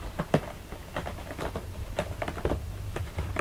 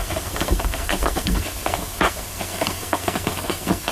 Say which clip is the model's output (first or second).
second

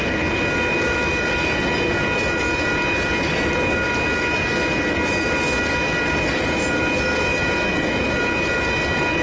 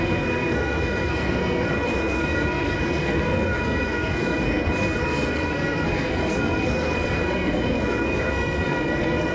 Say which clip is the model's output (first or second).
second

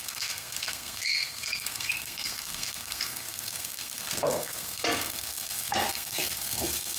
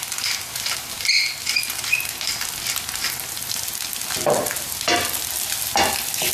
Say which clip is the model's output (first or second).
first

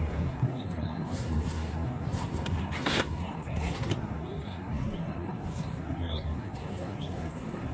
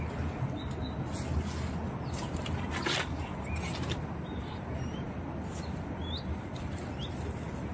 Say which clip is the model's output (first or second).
first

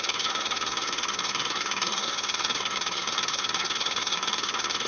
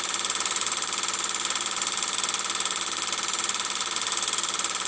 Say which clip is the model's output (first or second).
first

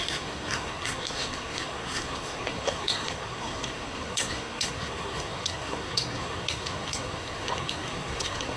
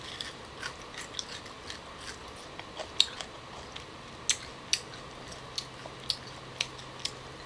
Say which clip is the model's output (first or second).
first